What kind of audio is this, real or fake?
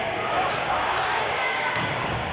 fake